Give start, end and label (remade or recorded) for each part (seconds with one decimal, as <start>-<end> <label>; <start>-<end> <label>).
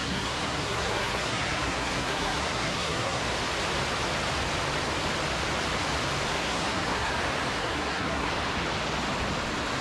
0.0-3.2 remade; 3.2-6.3 recorded; 6.3-7.1 remade; 7.1-7.6 recorded; 7.6-8.3 remade; 8.3-9.8 recorded